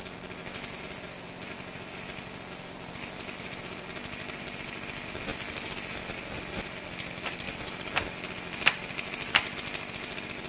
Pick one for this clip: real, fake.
real